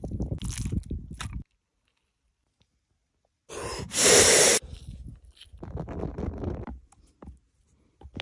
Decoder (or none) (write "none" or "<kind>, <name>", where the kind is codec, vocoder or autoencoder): none